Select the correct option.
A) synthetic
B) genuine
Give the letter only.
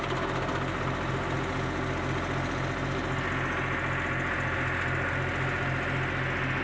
B